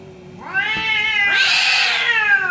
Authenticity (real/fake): real